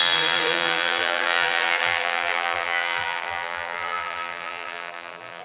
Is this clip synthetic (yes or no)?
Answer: yes